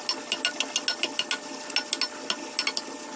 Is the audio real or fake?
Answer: real